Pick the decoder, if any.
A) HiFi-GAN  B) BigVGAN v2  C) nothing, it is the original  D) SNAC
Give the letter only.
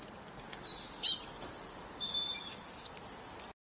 C